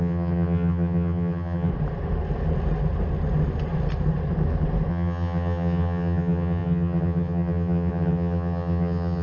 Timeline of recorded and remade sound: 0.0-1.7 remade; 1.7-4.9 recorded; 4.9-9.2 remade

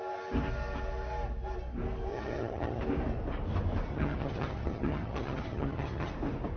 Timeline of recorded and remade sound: 0.0-2.1 recorded; 2.1-2.8 remade; 2.8-3.9 recorded; 3.9-6.1 remade; 6.1-6.6 recorded

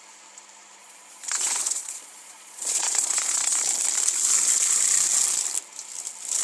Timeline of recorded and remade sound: 0.0-0.8 recorded; 0.8-3.6 remade; 3.6-6.4 recorded

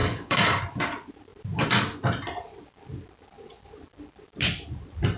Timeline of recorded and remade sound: 0.0-0.6 remade; 0.6-5.2 recorded

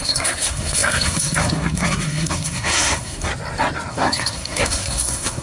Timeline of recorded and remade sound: 0.0-3.3 remade; 3.3-3.9 recorded; 3.9-5.4 remade

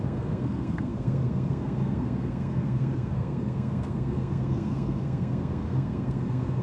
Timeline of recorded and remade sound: 0.0-6.6 remade